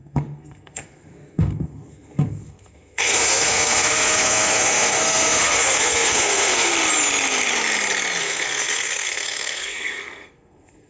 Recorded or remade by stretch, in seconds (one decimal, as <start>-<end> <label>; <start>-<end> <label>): 0.0-6.7 remade; 6.7-8.2 recorded; 8.2-10.9 remade